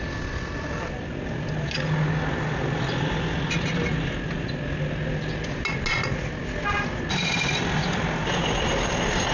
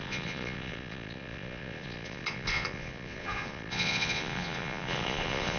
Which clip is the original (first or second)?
first